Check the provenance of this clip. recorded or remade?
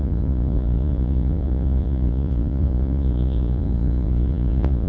remade